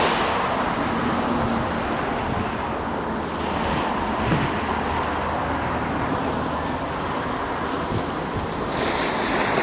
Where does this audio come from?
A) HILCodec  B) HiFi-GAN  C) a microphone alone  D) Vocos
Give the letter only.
C